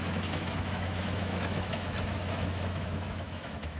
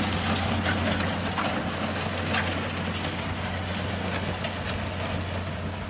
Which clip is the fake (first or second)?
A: first